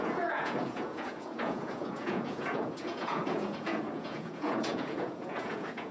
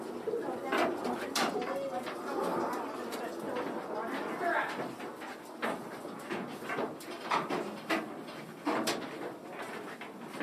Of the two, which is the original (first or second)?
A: second